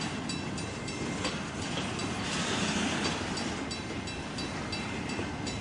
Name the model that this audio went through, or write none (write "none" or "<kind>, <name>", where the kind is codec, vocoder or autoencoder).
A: vocoder, BigVGAN v2